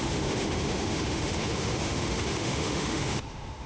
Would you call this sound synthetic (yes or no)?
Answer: yes